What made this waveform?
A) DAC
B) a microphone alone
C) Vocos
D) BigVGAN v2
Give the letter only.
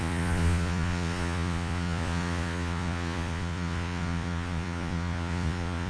C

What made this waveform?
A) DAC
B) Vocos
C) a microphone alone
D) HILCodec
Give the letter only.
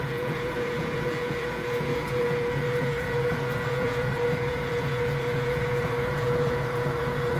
B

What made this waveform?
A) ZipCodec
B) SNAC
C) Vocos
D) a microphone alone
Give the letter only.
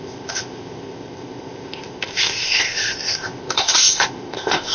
A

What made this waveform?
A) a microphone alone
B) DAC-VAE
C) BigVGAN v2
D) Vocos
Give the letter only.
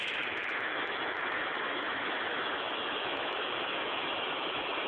B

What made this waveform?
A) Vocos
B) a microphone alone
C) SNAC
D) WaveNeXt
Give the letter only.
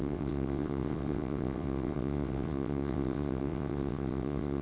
D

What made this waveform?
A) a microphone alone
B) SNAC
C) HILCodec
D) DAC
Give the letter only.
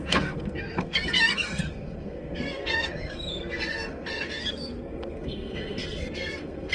B